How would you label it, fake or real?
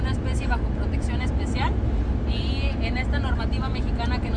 real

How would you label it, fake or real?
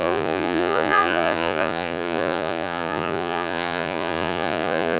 fake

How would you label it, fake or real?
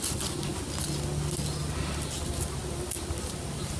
real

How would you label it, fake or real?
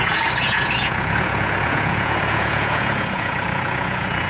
fake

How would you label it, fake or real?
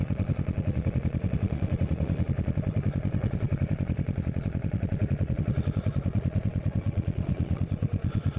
fake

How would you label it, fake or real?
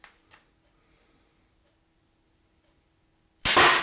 real